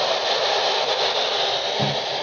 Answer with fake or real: real